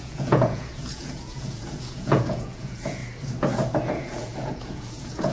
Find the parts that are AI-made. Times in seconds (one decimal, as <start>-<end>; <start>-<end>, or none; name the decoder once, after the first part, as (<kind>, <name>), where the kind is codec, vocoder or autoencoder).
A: 0.0-3.0 (vocoder, Vocos); 3.9-5.3